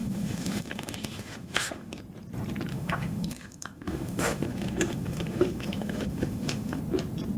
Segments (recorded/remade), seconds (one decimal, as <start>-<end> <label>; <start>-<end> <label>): 0.0-2.0 remade; 2.0-2.7 recorded; 2.7-6.8 remade; 6.8-7.4 recorded